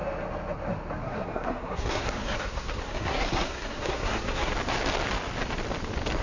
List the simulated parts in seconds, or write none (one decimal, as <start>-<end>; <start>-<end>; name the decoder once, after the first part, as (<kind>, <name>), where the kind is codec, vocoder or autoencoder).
1.0-4.5 (codec, SNAC)